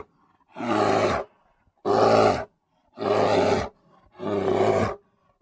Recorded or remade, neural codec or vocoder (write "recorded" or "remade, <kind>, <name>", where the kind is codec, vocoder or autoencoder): recorded